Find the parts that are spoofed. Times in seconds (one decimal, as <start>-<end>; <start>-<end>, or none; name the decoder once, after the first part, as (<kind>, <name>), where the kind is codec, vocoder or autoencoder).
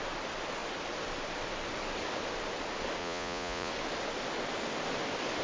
3.0-3.7 (vocoder, Vocos)